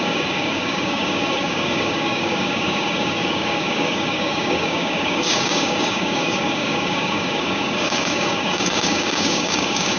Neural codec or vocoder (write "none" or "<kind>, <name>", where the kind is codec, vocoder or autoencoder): codec, DAC